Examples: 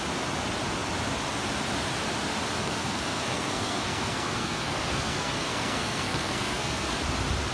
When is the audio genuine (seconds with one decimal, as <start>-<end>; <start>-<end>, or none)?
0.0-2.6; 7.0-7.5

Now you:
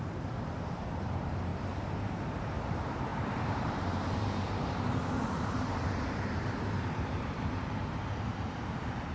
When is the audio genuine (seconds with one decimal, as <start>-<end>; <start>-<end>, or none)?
1.5-2.1

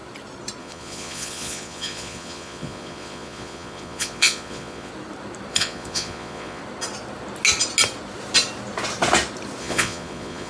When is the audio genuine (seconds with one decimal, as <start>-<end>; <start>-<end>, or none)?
0.0-0.6; 4.9-5.5; 6.6-9.6

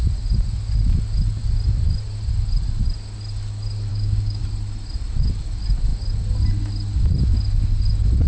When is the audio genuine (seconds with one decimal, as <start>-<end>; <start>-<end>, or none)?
0.0-3.9; 4.4-8.3

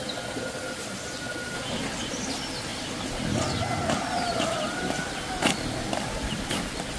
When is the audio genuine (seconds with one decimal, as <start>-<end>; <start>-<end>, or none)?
0.0-7.0

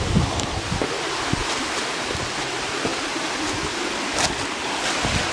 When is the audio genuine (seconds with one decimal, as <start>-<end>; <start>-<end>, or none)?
0.0-5.3